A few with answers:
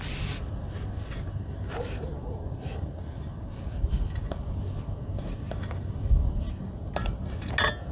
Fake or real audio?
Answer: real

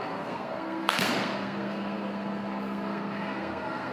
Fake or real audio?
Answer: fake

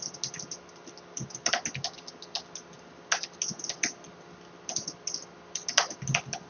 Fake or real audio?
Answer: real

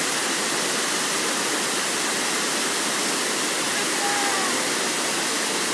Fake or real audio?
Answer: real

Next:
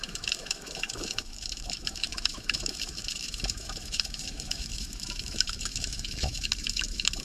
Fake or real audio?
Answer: fake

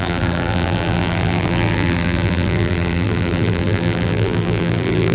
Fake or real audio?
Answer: fake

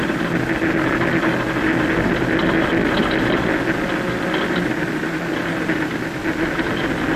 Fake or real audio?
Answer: real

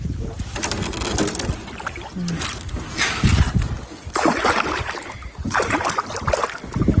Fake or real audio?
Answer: real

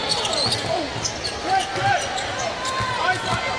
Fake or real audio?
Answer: real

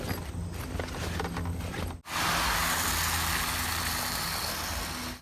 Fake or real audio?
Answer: real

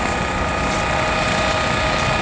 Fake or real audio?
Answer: real